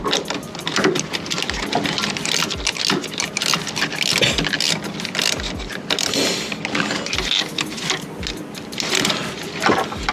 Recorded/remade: recorded